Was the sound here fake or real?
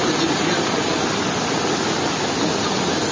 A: real